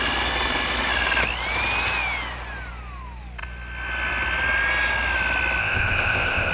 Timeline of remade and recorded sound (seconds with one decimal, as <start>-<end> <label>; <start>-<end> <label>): 0.0-5.6 recorded; 5.6-6.5 remade